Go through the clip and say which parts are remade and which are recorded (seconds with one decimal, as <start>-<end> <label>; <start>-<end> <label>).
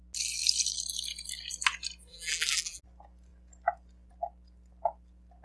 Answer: 0.0-2.1 recorded; 2.1-2.8 remade; 2.8-5.4 recorded